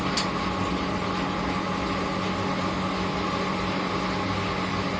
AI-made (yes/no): no